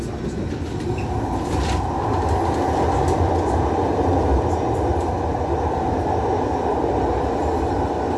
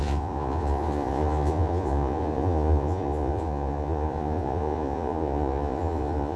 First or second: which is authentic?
first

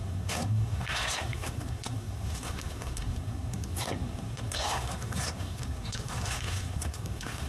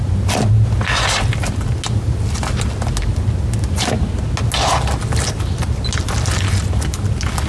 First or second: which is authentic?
second